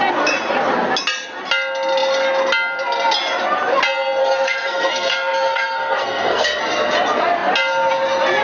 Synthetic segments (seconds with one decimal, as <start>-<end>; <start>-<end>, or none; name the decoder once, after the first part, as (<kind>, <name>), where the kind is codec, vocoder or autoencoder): 4.2-6.6 (codec, SNAC)